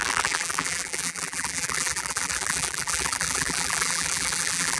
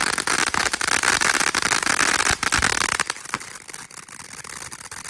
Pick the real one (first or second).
second